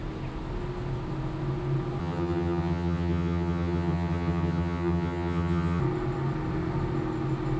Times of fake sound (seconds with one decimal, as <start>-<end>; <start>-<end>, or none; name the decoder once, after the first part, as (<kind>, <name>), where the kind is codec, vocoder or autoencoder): 2.0-5.8 (vocoder, HiFi-GAN)